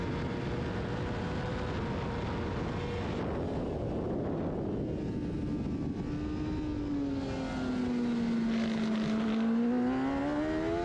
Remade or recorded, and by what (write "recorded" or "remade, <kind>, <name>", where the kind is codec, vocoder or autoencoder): recorded